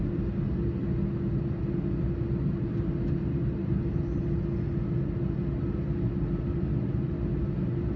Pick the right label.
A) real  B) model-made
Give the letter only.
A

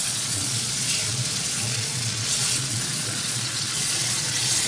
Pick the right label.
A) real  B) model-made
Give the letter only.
B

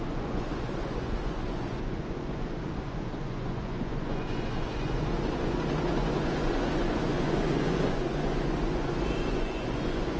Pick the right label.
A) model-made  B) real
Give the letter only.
A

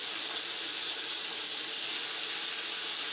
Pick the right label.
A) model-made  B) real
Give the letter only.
B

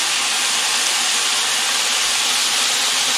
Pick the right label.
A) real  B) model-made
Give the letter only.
A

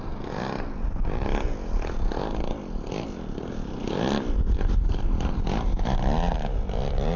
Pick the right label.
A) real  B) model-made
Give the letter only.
A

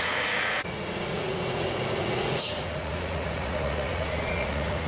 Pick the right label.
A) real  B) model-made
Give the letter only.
B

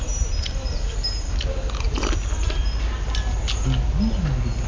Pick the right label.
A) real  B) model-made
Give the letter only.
A